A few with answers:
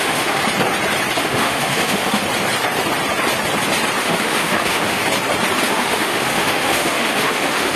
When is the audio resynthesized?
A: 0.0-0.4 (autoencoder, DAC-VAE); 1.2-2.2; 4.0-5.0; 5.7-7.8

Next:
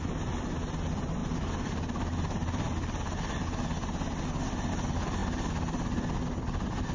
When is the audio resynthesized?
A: none

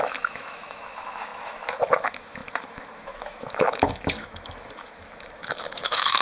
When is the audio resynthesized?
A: 0.0-6.2 (autoencoder, DAC-VAE)

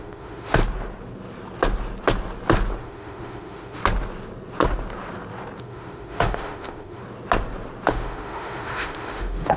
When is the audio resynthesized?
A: 0.0-0.6 (autoencoder, DAC-VAE); 2.8-3.8; 5.6-7.0; 7.9-9.6

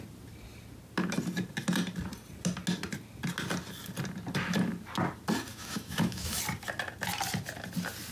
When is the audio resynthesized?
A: 5.5-6.4 (autoencoder, DAC-VAE)